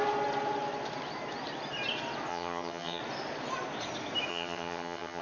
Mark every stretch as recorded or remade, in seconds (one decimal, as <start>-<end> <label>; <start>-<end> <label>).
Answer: 0.0-2.3 recorded; 2.3-3.0 remade; 3.0-4.3 recorded; 4.3-5.2 remade